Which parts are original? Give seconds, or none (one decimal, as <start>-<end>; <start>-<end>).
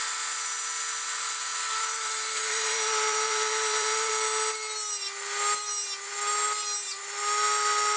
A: 0.0-1.5; 4.1-8.0